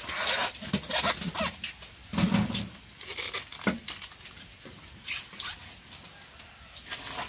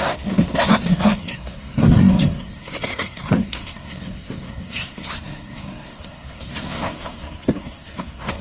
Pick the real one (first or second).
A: first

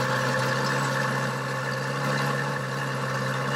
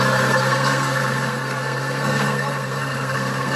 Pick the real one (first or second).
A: first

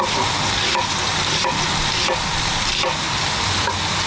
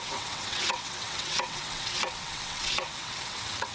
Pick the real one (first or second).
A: first